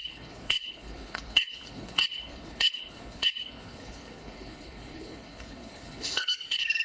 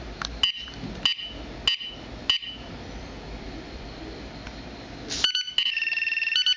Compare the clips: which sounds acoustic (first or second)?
second